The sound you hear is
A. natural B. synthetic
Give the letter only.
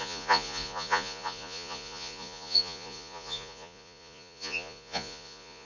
B